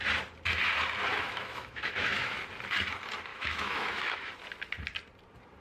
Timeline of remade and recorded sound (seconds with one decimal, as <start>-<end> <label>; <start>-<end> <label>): 0.0-1.1 recorded; 1.1-2.4 remade; 2.4-3.3 recorded; 3.3-4.3 remade; 4.3-5.6 recorded